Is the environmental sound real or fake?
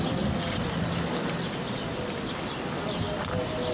real